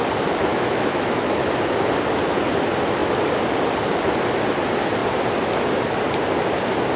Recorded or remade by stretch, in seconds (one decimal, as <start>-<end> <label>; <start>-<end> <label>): 0.0-0.5 recorded; 0.5-1.5 remade; 1.5-7.0 recorded